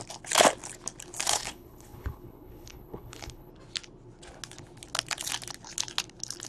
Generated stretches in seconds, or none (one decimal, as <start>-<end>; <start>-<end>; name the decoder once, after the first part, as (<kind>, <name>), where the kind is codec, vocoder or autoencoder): 1.3-3.5 (codec, HILCodec)